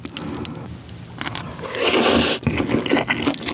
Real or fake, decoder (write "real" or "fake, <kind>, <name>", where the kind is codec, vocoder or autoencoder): real